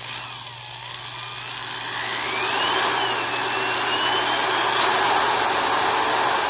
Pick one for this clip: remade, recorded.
recorded